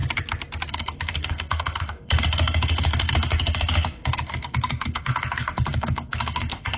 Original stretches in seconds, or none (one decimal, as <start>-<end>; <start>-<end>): 0.0-0.7